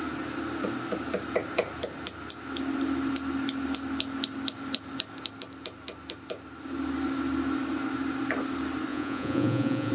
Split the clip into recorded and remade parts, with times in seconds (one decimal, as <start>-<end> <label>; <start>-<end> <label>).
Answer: 0.0-8.9 recorded; 8.9-9.9 remade